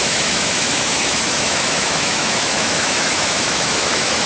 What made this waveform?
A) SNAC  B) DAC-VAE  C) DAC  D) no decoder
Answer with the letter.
B